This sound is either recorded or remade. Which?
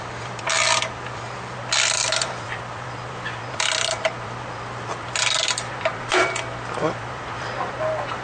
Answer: remade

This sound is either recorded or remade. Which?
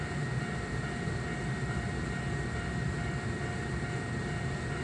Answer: remade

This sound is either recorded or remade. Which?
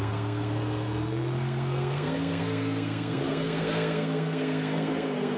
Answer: remade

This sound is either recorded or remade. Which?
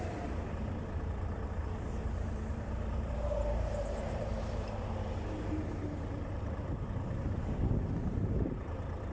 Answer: remade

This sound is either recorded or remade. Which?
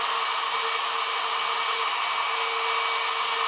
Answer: recorded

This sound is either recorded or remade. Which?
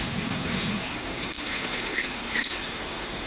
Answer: remade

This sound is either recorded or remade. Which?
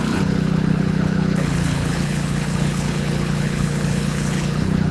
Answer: remade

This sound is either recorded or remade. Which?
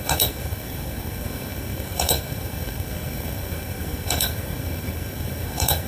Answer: remade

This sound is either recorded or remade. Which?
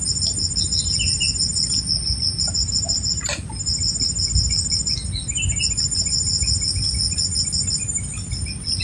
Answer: recorded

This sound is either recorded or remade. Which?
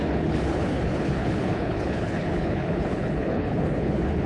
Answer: remade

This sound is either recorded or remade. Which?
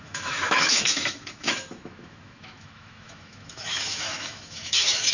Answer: remade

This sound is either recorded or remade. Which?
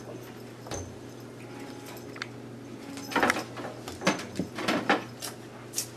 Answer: recorded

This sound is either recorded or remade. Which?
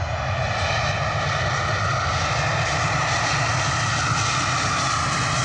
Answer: recorded